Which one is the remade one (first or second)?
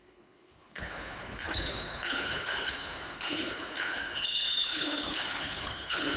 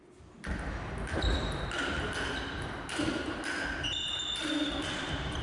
first